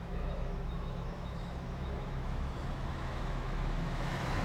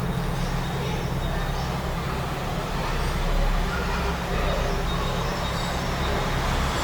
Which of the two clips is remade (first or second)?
first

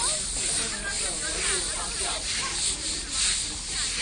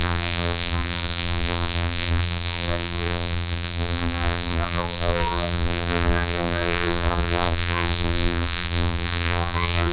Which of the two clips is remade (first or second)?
second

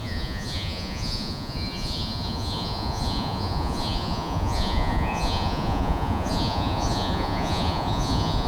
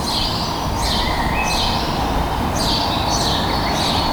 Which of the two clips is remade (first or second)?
first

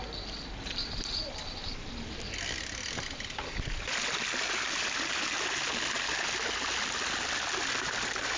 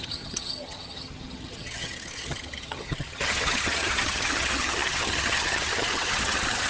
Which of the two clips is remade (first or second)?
second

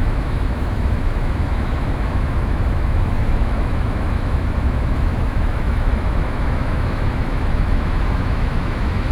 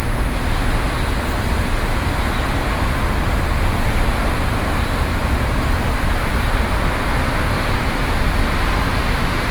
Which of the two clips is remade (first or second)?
first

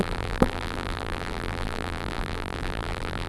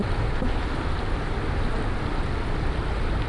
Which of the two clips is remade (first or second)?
first